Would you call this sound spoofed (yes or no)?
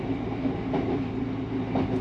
no